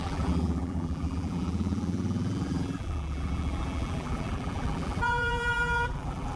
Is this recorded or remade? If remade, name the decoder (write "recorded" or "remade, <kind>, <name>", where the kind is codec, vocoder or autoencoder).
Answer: remade, vocoder, BigVGAN v2